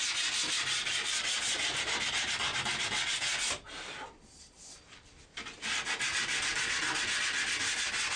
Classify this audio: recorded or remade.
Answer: recorded